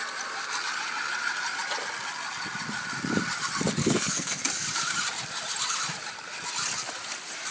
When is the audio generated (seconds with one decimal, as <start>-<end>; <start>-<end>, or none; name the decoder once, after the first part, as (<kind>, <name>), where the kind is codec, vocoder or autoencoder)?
3.8-4.4 (codec, SNAC)